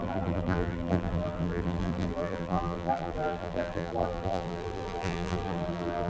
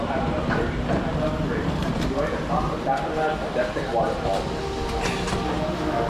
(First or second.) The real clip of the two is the second